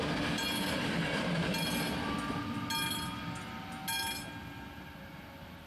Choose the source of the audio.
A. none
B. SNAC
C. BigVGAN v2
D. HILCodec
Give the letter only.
A